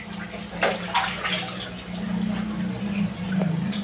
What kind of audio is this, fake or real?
real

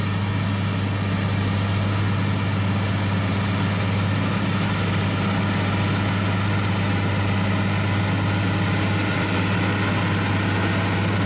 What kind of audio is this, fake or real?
real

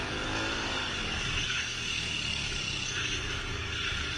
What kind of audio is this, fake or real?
fake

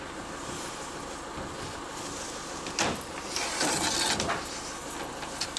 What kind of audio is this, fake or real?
real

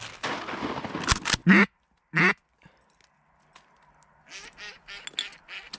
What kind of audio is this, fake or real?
real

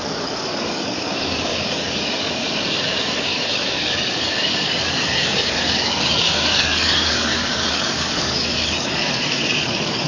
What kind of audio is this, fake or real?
fake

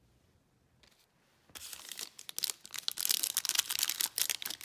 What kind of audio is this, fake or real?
real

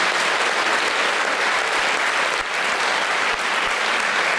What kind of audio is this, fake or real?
real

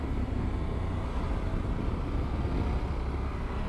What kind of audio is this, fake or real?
real